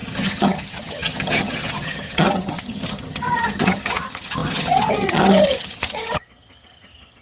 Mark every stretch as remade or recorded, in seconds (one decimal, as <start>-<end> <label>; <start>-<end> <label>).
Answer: 0.0-7.2 remade

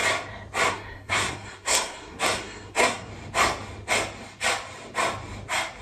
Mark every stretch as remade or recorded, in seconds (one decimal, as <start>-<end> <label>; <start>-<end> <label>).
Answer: 0.0-0.7 recorded; 0.7-3.1 remade; 3.1-5.8 recorded

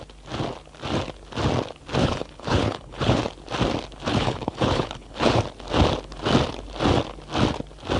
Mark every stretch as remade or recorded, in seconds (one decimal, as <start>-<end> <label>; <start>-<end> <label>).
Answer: 0.0-2.0 recorded; 2.0-3.2 remade; 3.2-4.1 recorded; 4.1-5.4 remade; 5.4-8.0 recorded

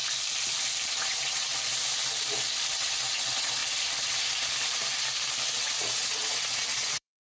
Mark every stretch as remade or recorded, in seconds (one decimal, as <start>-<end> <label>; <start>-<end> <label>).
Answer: 0.0-0.9 recorded; 0.9-1.5 remade; 1.5-2.7 recorded; 2.7-3.6 remade; 3.6-5.5 recorded; 5.5-7.3 remade

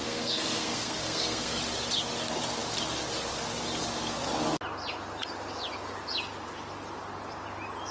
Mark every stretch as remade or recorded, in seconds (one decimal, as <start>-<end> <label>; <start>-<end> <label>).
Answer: 0.0-1.6 remade; 1.6-7.9 recorded

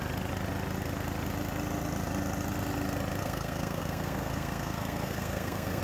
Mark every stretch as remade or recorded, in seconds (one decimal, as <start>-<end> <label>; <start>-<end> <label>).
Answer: 0.0-3.2 recorded; 3.2-5.8 remade

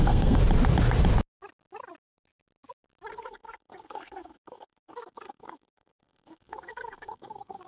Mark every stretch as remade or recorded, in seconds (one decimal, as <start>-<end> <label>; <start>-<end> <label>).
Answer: 0.0-0.4 remade; 0.4-3.1 recorded; 3.1-7.7 remade